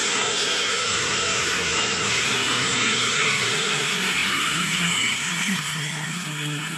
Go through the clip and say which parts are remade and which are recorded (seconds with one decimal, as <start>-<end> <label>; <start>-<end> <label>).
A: 0.0-6.8 remade